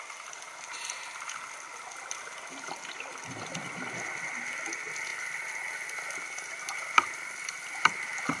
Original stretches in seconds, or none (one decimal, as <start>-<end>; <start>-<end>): 0.0-8.4